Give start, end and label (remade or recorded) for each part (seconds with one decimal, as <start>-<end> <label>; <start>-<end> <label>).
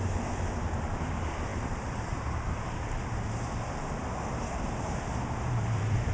0.0-6.1 remade